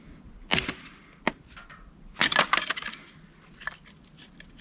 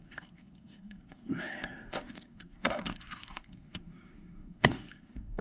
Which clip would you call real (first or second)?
first